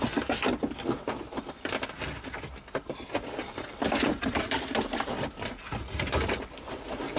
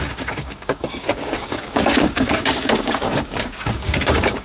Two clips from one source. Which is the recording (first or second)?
first